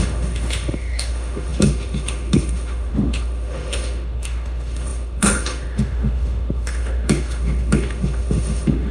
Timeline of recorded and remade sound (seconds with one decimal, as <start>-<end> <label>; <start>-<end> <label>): 0.0-8.9 remade